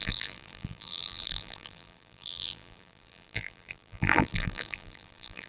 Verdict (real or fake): fake